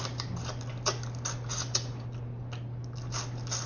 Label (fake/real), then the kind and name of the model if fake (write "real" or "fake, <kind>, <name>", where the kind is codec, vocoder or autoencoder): real